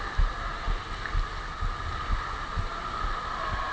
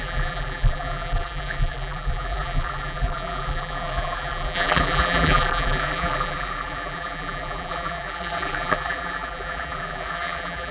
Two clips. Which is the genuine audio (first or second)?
first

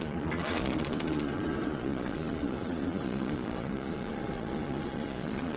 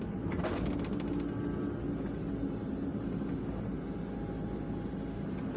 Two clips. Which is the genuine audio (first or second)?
second